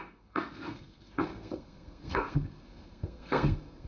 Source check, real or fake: fake